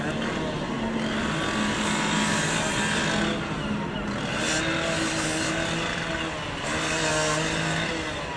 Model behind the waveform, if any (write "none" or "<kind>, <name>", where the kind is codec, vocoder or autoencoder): none